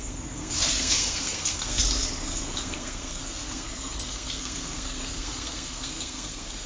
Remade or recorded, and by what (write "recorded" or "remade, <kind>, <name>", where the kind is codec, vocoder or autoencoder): remade, codec, SNAC